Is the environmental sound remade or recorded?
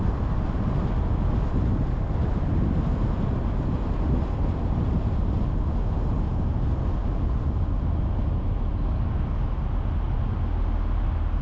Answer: recorded